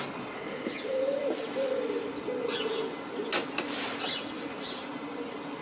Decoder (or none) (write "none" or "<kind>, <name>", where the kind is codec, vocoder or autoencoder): none